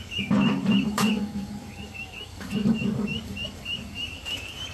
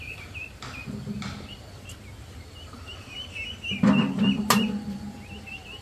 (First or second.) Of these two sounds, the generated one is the first